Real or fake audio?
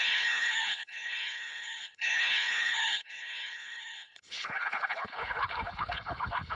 fake